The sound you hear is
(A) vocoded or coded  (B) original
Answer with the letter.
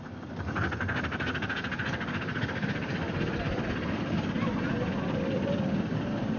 B